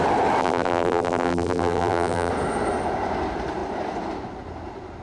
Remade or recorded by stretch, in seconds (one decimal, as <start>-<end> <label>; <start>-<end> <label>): 0.0-0.4 recorded; 0.4-2.3 remade; 2.3-5.0 recorded